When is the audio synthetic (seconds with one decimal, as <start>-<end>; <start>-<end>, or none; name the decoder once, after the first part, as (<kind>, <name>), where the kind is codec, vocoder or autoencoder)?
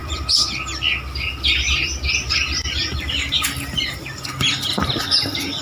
1.8-5.6 (vocoder, BigVGAN v2)